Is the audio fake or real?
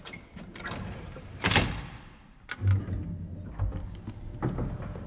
real